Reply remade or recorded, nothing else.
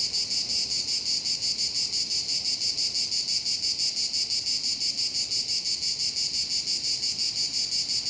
recorded